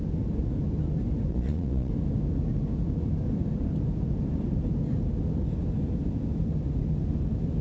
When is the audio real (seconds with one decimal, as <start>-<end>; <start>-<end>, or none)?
0.0-1.3; 1.9-7.6